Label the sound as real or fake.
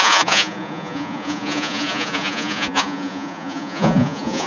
fake